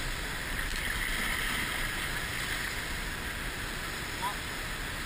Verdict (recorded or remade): recorded